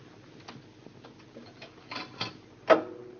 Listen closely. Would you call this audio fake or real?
real